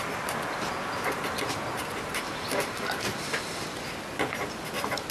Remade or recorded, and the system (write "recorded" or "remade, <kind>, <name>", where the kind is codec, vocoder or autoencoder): recorded